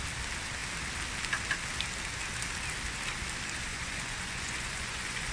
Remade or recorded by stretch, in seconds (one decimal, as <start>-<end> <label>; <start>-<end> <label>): 0.0-3.7 recorded; 3.7-5.3 remade